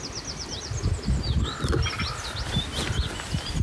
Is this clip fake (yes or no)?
no